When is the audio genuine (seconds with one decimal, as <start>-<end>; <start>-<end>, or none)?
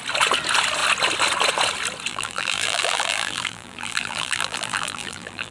0.0-2.1